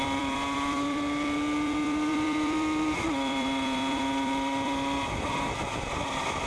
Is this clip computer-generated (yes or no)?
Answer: yes